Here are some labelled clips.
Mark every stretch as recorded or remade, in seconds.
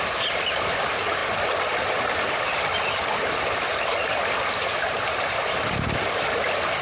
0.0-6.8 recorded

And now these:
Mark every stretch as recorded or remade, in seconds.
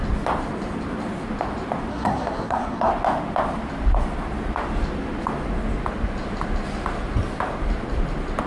0.0-1.9 recorded; 1.9-2.9 remade; 2.9-8.5 recorded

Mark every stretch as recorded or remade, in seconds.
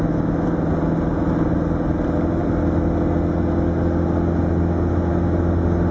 0.0-5.9 recorded